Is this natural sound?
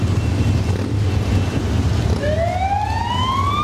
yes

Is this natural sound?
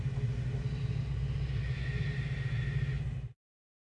yes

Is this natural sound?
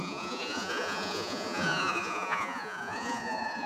no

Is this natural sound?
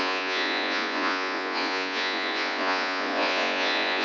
no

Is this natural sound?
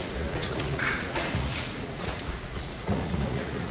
no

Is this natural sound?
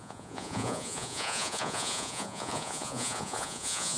no